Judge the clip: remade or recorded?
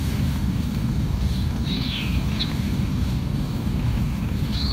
remade